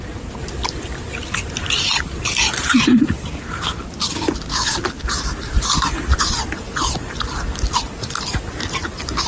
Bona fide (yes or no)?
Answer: no